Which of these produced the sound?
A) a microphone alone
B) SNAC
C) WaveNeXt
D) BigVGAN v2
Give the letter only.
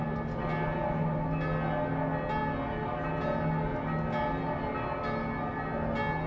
A